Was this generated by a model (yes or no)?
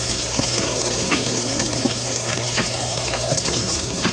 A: yes